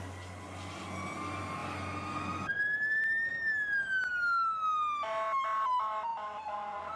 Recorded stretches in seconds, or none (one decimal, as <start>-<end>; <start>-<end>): 0.0-6.1